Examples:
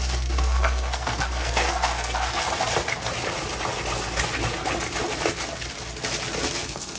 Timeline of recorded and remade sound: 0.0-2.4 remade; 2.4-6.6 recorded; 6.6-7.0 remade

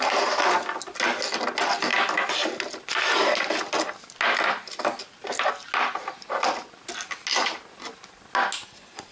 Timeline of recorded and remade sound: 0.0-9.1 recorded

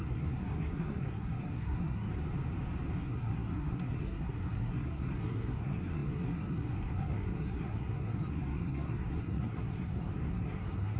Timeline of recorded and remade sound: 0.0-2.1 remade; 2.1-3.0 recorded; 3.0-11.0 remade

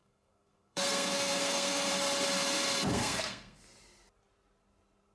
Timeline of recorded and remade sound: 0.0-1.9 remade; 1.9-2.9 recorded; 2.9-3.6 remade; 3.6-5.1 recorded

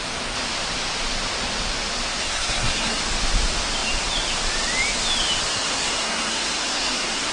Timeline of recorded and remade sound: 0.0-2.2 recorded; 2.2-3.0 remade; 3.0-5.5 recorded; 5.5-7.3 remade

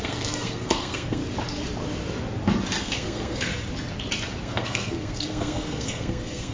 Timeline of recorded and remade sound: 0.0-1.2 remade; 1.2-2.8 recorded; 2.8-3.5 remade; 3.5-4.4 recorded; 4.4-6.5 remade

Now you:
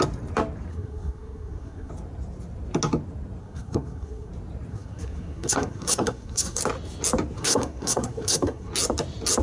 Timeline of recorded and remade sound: 0.0-0.7 recorded; 0.7-1.9 remade; 1.9-3.4 recorded; 3.4-4.3 remade; 4.3-4.7 recorded; 4.7-6.6 remade; 6.6-7.4 recorded; 7.4-8.7 remade; 8.7-9.4 recorded